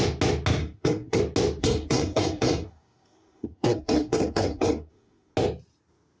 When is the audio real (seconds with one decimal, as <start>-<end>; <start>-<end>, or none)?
0.0-0.6; 1.2-1.6; 5.3-6.2

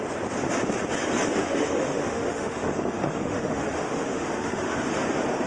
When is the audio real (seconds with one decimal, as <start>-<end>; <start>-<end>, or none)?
0.0-1.4; 4.7-5.5

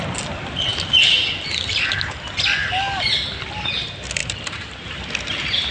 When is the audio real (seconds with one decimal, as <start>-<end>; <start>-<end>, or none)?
0.0-4.2; 5.1-5.7

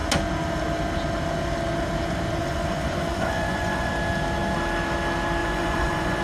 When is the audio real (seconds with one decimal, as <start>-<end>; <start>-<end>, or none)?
0.0-2.4; 3.9-5.4

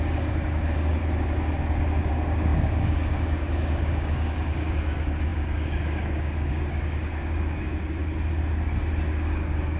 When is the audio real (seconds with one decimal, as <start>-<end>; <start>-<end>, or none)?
1.0-2.1; 8.0-9.1

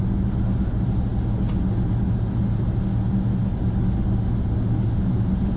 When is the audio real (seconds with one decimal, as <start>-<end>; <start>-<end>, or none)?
0.0-5.6

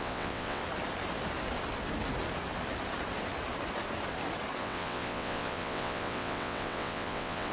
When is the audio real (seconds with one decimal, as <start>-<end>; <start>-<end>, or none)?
0.6-4.6